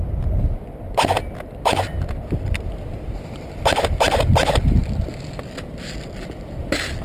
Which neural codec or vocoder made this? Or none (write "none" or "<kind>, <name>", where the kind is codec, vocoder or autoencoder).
none